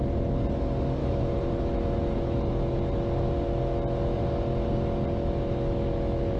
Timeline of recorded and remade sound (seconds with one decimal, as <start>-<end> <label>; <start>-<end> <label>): 0.0-1.0 recorded; 1.0-2.8 remade; 2.8-5.2 recorded; 5.2-6.4 remade